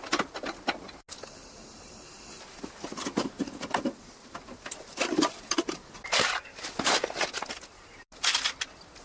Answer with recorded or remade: recorded